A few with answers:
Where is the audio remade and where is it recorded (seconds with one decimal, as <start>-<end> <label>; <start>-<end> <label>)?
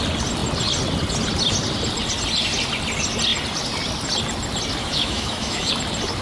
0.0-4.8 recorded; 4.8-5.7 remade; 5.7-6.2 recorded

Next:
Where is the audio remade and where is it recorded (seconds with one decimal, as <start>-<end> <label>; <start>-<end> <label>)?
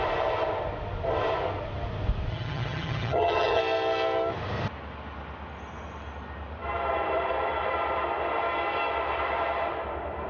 0.0-2.3 recorded; 2.3-3.6 remade; 3.6-10.3 recorded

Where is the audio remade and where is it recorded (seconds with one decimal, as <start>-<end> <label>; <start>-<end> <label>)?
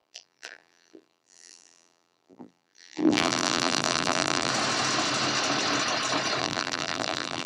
0.0-4.5 remade; 4.5-6.4 recorded; 6.4-7.5 remade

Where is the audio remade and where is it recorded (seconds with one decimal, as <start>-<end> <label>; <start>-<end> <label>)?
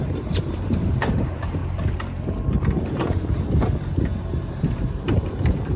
0.0-1.6 remade; 1.6-4.5 recorded; 4.5-5.8 remade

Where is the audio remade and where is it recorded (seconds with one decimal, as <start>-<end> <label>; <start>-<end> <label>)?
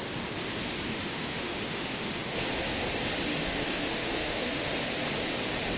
0.0-0.9 recorded; 0.9-2.4 remade; 2.4-3.3 recorded; 3.3-4.7 remade; 4.7-5.8 recorded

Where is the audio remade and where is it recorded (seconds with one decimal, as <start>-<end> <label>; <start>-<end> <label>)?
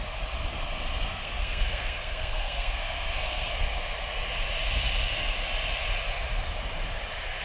0.0-1.1 recorded; 1.1-3.5 remade; 3.5-7.4 recorded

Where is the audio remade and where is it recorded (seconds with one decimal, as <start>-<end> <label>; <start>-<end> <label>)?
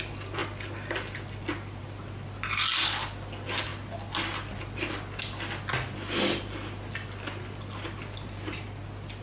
0.0-9.2 recorded